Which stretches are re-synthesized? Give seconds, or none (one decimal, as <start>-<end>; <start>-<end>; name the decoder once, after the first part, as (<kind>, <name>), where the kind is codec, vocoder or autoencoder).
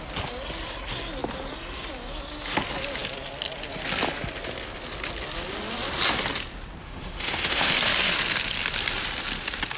6.8-7.7 (autoencoder, DAC-VAE)